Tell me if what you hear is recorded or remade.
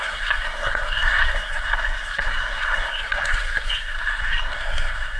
remade